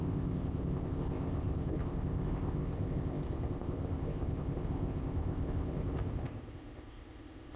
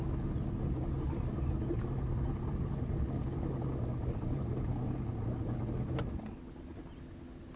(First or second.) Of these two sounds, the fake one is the first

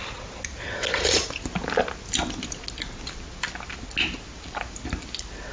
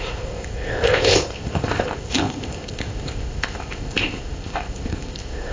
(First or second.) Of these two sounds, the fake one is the second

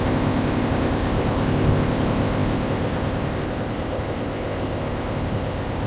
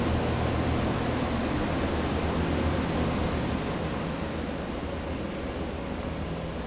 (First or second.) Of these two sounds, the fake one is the first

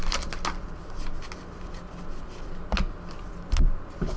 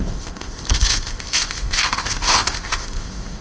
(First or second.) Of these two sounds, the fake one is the second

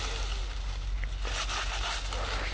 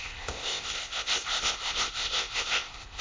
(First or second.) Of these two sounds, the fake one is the second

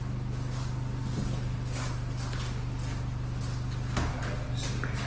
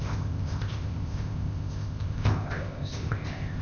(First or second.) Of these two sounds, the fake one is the second